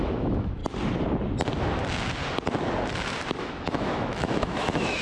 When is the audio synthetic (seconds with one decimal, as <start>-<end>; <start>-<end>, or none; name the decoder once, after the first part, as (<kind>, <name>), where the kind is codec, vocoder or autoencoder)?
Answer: 0.0-0.6 (autoencoder, DAC-VAE); 3.4-5.0